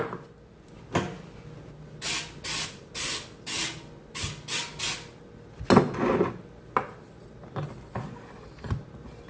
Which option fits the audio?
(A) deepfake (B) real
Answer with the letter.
B